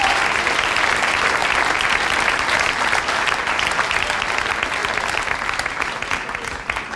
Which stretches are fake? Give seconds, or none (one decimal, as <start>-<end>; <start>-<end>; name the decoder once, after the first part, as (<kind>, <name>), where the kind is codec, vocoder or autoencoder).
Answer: none